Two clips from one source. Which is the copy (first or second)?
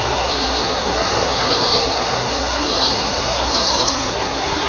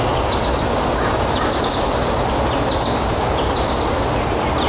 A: first